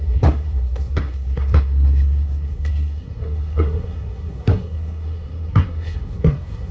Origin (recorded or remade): remade